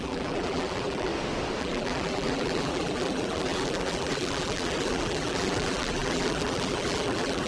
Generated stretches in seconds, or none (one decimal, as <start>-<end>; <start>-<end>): 0.0-1.1; 1.6-7.5

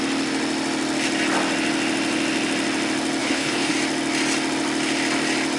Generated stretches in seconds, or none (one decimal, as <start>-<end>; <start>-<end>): 3.2-3.7

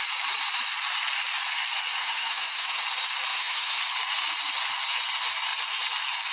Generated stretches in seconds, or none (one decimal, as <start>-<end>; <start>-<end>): 2.0-2.8; 3.3-3.8

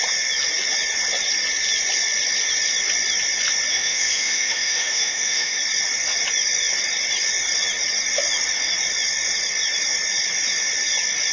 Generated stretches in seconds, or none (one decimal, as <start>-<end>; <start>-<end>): 3.7-5.6

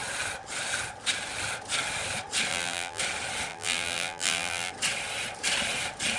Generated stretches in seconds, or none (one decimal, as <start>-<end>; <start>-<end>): 2.5-3.0; 3.5-4.7

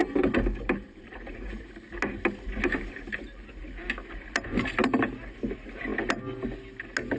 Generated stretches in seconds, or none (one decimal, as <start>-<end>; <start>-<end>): 0.0-1.6